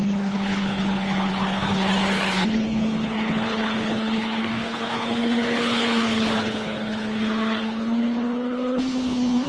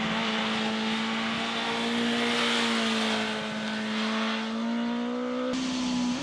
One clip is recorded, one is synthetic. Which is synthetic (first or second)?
first